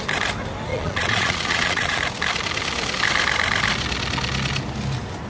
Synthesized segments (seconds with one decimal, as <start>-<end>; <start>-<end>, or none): 0.7-2.0